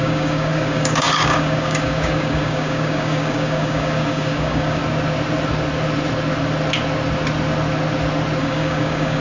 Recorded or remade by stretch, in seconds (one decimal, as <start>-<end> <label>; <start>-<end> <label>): 0.0-4.8 remade; 4.8-8.4 recorded; 8.4-9.2 remade